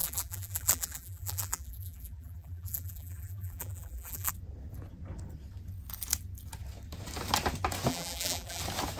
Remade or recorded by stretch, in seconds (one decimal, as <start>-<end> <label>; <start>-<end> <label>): 0.0-4.3 remade; 4.3-7.9 recorded; 7.9-8.6 remade; 8.6-9.0 recorded